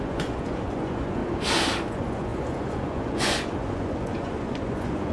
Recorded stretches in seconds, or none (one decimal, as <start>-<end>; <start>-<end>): 1.2-1.9